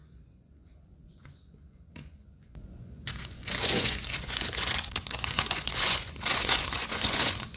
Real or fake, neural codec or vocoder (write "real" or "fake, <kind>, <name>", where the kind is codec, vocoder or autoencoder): fake, vocoder, Vocos